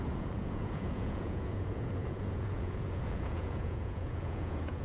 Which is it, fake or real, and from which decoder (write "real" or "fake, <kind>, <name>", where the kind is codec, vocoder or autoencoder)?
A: fake, vocoder, Vocos